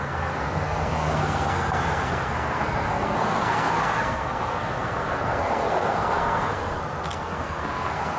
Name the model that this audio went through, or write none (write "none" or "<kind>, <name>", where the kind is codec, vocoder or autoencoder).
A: codec, SNAC